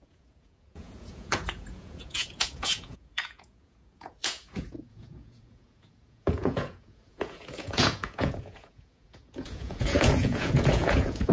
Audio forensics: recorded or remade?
remade